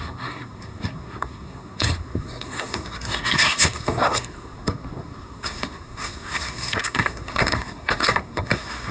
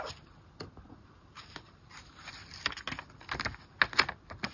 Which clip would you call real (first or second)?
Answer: second